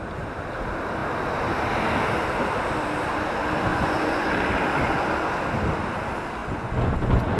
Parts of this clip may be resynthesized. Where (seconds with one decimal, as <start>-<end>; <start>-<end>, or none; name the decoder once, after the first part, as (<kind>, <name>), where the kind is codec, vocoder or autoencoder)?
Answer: 3.7-4.3 (vocoder, Vocos); 6.4-7.4

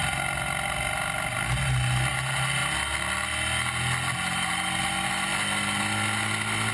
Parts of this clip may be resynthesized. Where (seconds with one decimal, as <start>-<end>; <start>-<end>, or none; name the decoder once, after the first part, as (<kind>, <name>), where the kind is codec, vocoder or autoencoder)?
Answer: none